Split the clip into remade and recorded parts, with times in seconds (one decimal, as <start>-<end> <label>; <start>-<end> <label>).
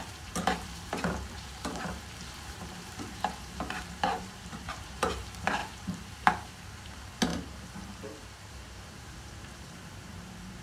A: 0.0-10.6 remade